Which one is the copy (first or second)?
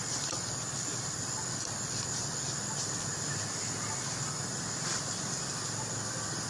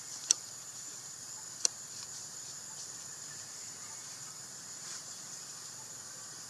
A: second